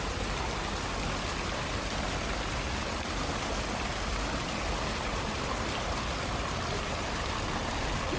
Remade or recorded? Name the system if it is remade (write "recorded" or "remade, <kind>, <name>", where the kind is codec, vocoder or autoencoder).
recorded